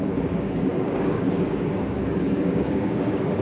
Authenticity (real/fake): fake